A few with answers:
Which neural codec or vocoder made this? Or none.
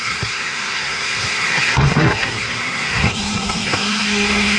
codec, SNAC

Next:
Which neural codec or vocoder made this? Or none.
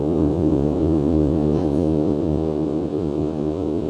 vocoder, Vocos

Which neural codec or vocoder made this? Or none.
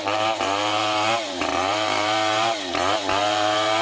vocoder, BigVGAN v2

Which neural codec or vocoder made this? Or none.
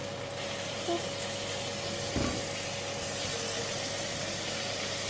none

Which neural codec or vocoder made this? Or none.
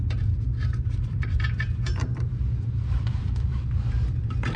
vocoder, BigVGAN v2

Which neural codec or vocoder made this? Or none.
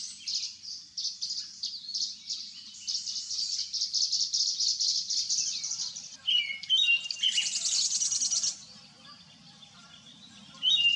none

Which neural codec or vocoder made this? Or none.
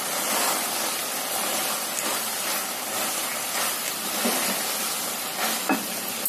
none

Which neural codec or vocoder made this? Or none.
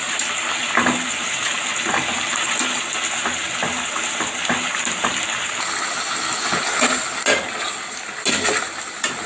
none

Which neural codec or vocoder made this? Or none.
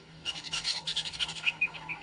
codec, DAC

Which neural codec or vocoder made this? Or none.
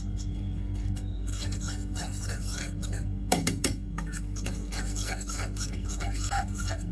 codec, SNAC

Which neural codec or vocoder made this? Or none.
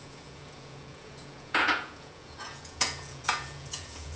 vocoder, Vocos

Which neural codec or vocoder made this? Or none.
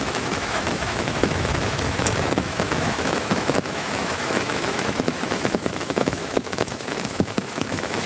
autoencoder, DAC-VAE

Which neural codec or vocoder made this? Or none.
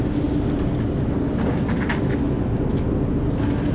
none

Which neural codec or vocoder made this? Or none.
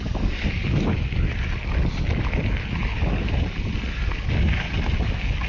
none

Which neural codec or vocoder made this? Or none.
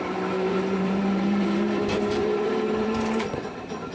vocoder, BigVGAN v2